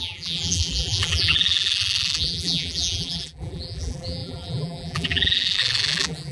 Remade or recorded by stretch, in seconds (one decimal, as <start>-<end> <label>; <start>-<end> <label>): 0.0-6.3 remade